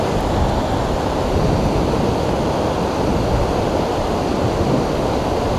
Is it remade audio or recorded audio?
recorded